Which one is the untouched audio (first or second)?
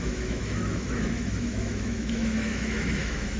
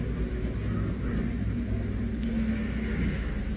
second